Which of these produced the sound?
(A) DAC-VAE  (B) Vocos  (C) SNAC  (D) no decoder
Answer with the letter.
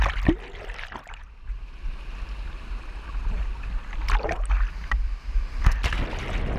D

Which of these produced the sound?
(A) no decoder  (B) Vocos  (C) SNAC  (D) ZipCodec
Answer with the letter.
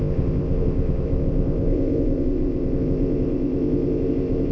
D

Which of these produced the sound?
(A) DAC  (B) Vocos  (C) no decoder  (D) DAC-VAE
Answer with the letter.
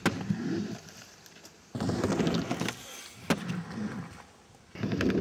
C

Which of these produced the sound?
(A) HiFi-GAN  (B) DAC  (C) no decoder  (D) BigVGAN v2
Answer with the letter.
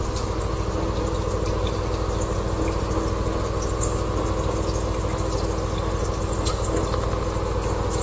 C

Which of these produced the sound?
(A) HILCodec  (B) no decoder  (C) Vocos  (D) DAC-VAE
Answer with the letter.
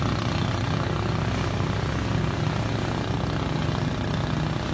B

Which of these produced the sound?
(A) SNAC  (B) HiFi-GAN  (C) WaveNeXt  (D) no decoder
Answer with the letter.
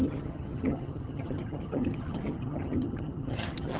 B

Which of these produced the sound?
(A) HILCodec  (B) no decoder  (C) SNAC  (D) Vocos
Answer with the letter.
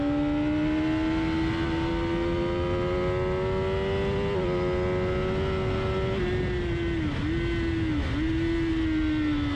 B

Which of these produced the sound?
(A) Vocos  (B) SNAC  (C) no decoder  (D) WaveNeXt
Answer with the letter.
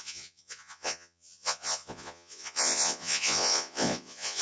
A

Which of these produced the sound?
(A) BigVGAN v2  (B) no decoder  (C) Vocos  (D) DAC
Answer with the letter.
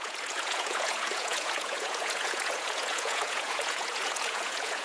C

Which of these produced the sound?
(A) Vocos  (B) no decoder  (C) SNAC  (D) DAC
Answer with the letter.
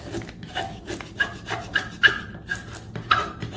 B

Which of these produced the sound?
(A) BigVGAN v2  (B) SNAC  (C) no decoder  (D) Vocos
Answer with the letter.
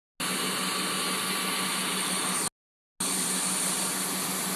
C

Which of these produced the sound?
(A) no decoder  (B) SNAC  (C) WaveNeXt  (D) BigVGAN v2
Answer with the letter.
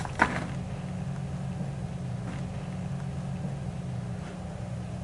A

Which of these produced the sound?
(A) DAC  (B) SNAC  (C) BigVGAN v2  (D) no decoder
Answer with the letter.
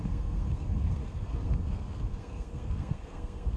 B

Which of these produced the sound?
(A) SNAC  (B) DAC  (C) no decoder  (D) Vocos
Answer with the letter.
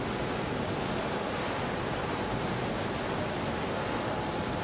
C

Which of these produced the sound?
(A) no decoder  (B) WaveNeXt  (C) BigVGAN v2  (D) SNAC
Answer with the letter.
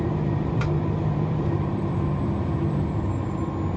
C